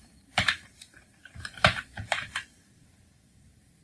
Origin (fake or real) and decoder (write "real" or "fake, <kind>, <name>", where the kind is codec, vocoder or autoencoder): fake, vocoder, BigVGAN v2